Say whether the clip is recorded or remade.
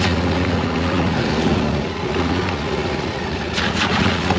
remade